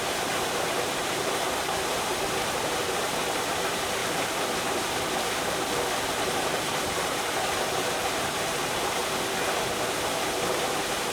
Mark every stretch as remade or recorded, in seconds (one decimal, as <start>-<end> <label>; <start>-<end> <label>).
0.0-4.0 remade; 4.0-6.1 recorded; 6.1-9.0 remade; 9.0-10.5 recorded; 10.5-11.1 remade

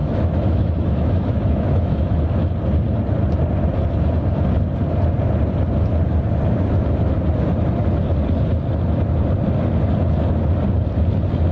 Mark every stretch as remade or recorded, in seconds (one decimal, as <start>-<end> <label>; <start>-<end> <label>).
0.0-2.2 remade; 2.2-11.5 recorded

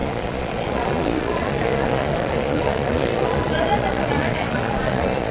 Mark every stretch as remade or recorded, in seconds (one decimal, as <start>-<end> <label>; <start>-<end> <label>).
0.0-5.3 remade

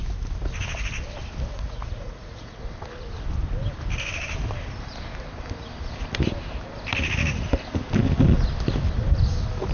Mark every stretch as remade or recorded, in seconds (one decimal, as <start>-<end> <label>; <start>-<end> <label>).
0.0-1.5 recorded; 1.5-2.6 remade; 2.6-9.7 recorded

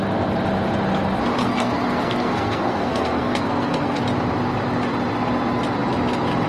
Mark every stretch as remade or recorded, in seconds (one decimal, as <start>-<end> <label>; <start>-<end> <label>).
0.0-1.4 recorded; 1.4-4.0 remade; 4.0-6.5 recorded

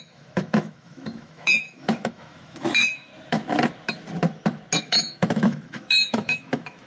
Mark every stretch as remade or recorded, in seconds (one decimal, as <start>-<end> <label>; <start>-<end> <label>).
0.0-3.1 remade; 3.1-4.8 recorded; 4.8-6.9 remade